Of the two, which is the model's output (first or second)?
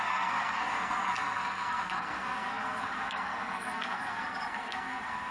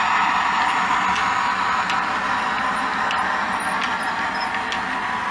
first